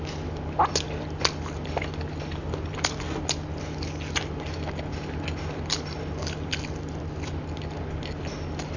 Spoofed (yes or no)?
no